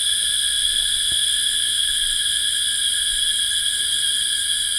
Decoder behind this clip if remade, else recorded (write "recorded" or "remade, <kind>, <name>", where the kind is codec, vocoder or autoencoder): recorded